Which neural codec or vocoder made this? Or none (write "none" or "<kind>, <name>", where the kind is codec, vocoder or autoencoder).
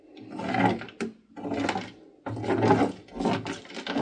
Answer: none